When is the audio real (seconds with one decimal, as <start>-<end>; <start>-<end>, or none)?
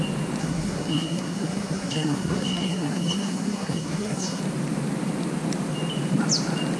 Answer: 0.0-0.4; 4.4-6.8